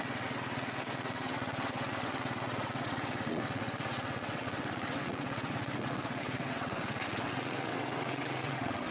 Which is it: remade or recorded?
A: remade